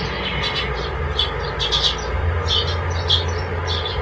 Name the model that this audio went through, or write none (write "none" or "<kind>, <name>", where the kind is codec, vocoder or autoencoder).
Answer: none